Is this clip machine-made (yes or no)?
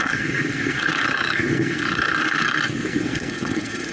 yes